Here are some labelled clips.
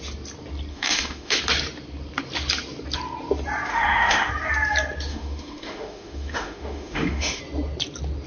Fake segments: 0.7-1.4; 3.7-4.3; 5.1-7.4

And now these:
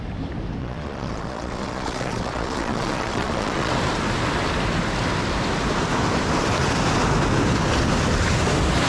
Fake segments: 0.6-3.7